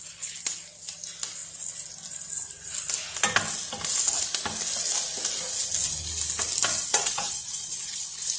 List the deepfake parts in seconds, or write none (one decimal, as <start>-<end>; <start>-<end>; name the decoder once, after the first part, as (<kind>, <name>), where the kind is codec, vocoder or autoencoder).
6.9-8.0 (vocoder, WaveNeXt)